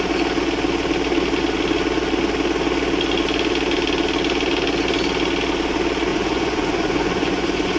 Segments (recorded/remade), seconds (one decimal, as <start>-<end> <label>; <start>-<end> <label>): 0.0-6.1 recorded; 6.1-7.8 remade